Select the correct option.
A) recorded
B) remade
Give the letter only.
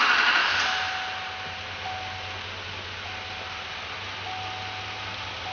A